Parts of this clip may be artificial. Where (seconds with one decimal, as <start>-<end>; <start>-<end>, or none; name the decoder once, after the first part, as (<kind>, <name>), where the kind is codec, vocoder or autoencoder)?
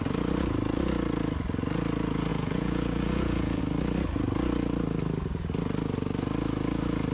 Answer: 2.3-3.6 (vocoder, Vocos)